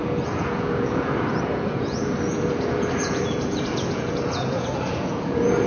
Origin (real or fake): fake